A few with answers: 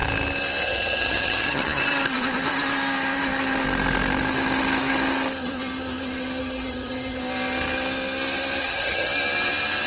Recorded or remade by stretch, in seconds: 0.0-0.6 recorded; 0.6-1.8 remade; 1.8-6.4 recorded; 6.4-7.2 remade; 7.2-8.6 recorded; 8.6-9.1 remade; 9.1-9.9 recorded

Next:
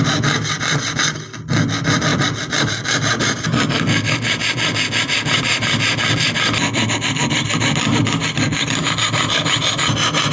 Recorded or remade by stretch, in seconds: 0.0-10.3 recorded

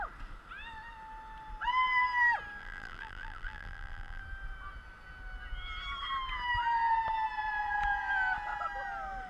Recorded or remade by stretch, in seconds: 0.0-2.6 recorded; 2.6-4.2 remade; 4.2-9.3 recorded

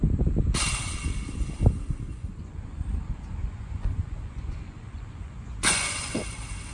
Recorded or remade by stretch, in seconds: 0.0-2.1 recorded; 2.1-6.1 remade; 6.1-6.7 recorded

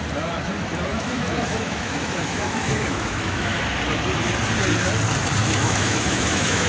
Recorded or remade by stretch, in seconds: 0.0-0.9 recorded; 0.9-3.6 remade; 3.6-5.4 recorded; 5.4-6.7 remade